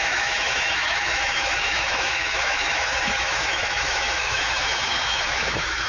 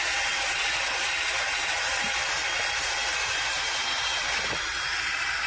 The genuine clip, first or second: second